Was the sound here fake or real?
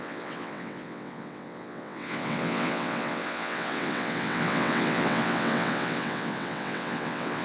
fake